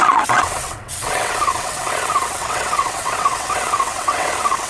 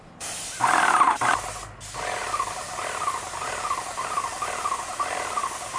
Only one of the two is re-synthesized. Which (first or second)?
first